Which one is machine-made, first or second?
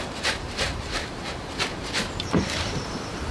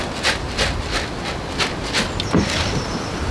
first